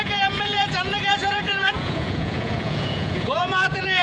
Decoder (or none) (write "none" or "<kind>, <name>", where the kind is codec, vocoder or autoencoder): vocoder, Vocos